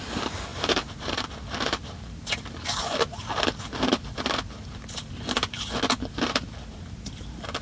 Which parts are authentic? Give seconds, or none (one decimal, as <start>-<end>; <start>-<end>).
none